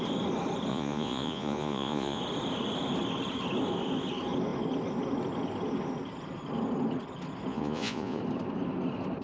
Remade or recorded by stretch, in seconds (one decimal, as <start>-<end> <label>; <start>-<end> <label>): 0.0-0.7 recorded; 0.7-2.2 remade; 2.2-7.5 recorded; 7.5-8.2 remade; 8.2-9.2 recorded